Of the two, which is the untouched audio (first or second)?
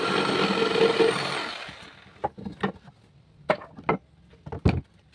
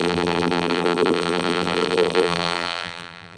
first